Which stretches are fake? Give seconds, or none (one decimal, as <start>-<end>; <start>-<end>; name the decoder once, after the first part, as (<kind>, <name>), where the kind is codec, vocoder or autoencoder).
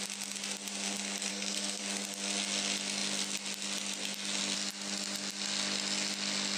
1.3-1.8 (codec, SNAC)